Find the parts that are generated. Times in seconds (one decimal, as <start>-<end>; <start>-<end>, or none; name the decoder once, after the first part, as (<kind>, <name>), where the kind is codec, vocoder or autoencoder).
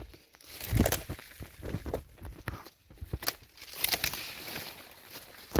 none